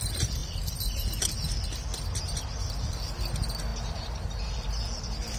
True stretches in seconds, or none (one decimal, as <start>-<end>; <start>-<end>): 0.0-5.4